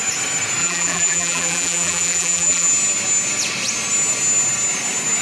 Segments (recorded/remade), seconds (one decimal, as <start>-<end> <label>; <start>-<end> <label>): 0.0-0.6 recorded; 0.6-2.7 remade; 2.7-5.2 recorded